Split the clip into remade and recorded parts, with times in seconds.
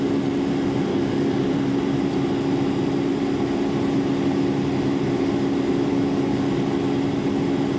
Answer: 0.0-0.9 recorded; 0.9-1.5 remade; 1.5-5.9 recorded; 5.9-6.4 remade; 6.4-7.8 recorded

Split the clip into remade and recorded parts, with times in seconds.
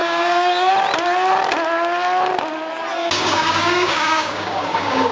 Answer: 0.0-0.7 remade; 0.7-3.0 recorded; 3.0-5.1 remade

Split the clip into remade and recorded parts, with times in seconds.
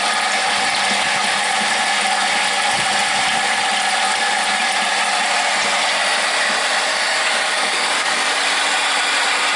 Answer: 0.0-6.9 recorded; 6.9-8.3 remade; 8.3-9.6 recorded